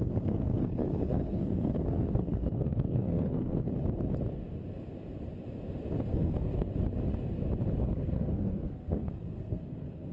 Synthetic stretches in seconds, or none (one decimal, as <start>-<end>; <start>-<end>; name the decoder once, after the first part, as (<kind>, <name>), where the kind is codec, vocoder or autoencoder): 0.0-3.7 (codec, SNAC); 6.1-6.7; 7.8-10.1